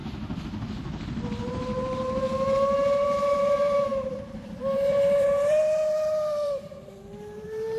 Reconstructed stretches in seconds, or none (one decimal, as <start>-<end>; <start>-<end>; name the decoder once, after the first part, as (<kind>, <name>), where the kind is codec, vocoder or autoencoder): 1.5-7.8 (vocoder, BigVGAN v2)